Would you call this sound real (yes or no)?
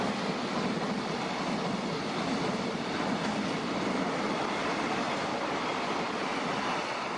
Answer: yes